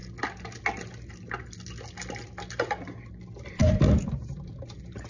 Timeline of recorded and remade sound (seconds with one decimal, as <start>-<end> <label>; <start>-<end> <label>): 0.0-3.6 recorded; 3.6-5.1 remade